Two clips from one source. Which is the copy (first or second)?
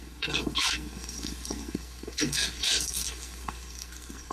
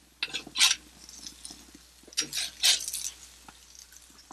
first